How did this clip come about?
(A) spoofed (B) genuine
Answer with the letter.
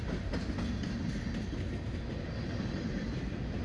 B